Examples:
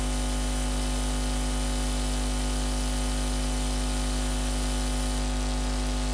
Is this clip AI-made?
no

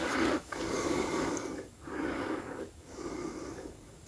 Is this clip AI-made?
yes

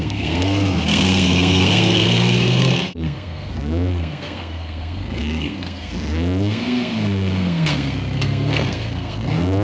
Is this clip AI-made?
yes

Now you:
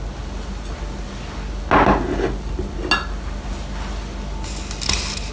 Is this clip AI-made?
no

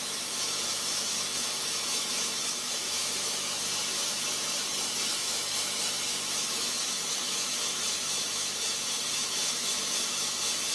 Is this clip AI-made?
yes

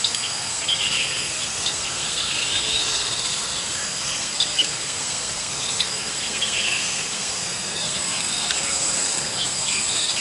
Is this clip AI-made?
yes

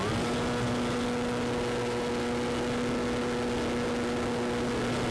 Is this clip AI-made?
no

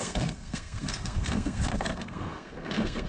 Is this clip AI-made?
yes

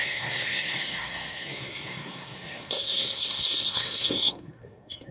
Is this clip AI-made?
yes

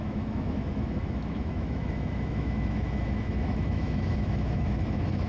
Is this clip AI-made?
yes